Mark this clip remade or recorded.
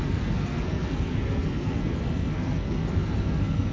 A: remade